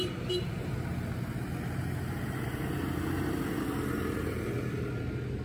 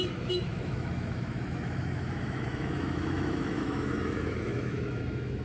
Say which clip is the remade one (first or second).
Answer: second